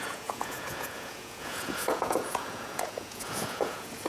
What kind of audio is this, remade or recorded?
remade